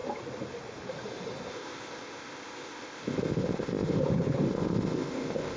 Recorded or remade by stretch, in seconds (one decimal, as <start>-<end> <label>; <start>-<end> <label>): 0.0-1.5 recorded; 1.5-4.0 remade; 4.0-4.5 recorded; 4.5-5.6 remade